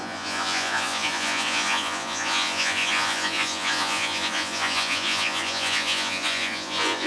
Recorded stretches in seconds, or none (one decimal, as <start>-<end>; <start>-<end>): none